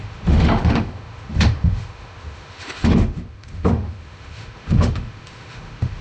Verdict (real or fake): fake